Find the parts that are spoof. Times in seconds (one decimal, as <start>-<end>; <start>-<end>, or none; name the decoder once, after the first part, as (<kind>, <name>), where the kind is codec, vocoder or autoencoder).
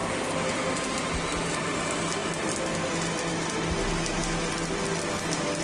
none